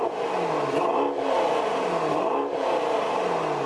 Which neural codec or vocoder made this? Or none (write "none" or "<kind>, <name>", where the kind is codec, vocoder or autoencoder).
none